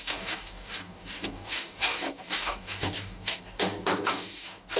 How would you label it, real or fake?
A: fake